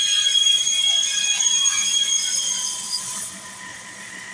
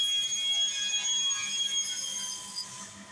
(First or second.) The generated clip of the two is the first